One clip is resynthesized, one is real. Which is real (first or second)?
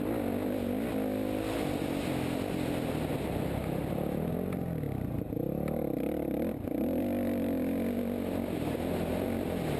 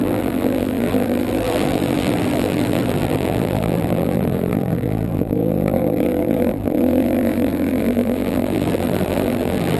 first